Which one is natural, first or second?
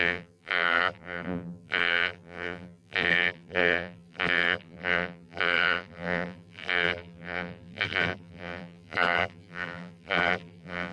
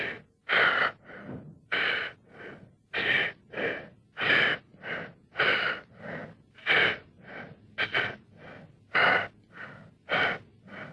second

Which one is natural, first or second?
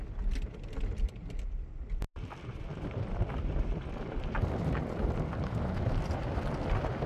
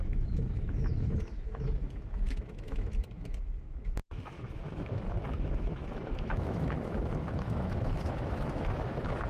first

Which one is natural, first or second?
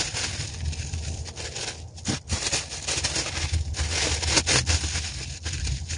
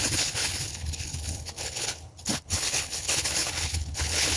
first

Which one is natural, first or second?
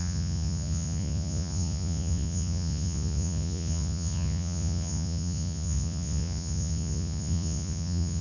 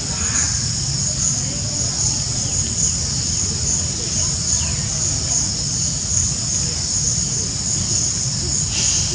second